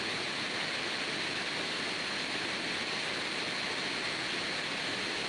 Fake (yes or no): no